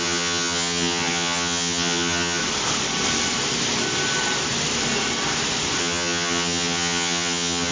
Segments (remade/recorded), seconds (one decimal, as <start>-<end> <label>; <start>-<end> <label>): 0.0-2.4 remade; 2.4-5.8 recorded; 5.8-7.7 remade

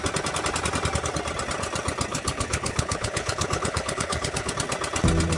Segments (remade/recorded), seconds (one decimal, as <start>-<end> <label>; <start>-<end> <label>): 0.0-2.1 recorded; 2.1-4.5 remade; 4.5-5.4 recorded

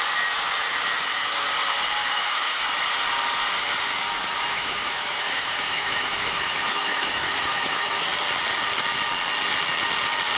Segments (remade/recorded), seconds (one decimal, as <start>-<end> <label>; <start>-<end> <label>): 0.0-2.0 recorded; 2.0-2.6 remade; 2.6-4.5 recorded; 4.5-8.1 remade; 8.1-10.4 recorded

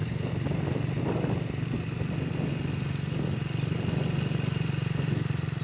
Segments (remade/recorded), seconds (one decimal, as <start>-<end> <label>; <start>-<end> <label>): 0.0-5.6 recorded

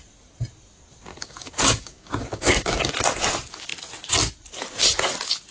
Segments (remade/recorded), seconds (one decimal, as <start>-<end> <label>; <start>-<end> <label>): 0.0-1.1 recorded; 1.1-2.9 remade; 2.9-5.5 recorded

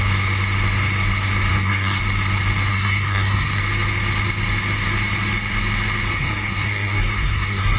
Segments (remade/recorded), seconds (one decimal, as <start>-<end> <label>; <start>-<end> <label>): 0.0-1.5 recorded; 1.5-2.0 remade; 2.0-2.7 recorded; 2.7-3.6 remade; 3.6-6.1 recorded; 6.1-7.8 remade

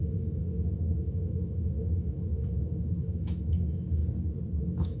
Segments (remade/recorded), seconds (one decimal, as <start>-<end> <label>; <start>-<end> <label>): 0.0-4.0 remade; 4.0-4.6 recorded; 4.6-5.0 remade